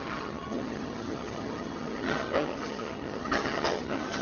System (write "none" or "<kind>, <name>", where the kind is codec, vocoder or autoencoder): vocoder, HiFi-GAN